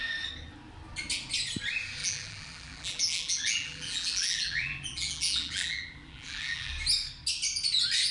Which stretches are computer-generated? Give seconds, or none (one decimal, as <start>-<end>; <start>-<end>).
2.0-6.7